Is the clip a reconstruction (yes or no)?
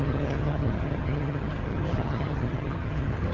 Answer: yes